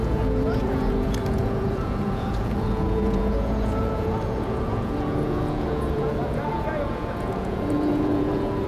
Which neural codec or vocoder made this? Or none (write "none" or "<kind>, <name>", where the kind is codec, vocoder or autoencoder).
vocoder, Vocos